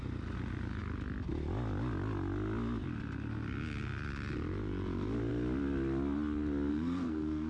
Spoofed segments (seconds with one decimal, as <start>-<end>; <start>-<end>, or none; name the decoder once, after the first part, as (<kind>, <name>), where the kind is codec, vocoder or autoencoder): 6.7-7.5 (codec, SNAC)